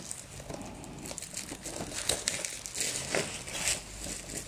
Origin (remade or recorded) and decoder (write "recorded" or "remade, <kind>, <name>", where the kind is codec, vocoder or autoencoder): recorded